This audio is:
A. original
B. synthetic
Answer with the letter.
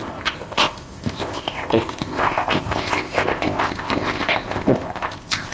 B